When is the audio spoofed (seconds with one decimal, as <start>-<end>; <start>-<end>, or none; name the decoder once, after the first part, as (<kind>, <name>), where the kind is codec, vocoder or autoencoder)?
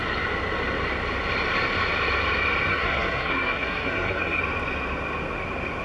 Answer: 2.7-4.4 (codec, SNAC)